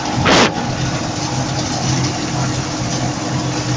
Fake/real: real